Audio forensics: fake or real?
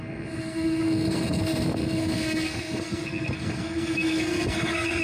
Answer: fake